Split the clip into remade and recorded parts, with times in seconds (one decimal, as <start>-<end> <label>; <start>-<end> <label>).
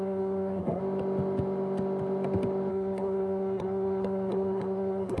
0.0-0.8 remade; 0.8-2.7 recorded; 2.7-5.2 remade